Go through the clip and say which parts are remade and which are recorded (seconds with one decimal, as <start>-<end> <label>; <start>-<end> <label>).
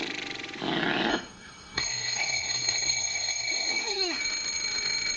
0.0-1.1 recorded; 1.1-4.2 remade; 4.2-5.2 recorded